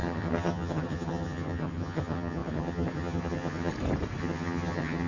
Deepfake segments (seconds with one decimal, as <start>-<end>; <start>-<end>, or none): 0.0-3.7; 4.2-5.1